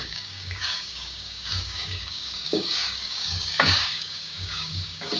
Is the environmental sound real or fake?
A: fake